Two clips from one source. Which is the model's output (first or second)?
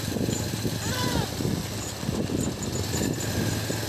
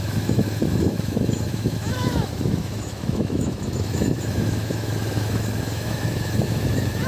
second